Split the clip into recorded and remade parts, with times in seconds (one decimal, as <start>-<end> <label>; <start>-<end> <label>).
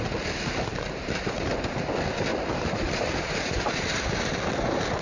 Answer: 0.0-0.7 recorded; 0.7-1.5 remade; 1.5-2.3 recorded; 2.3-4.0 remade; 4.0-5.0 recorded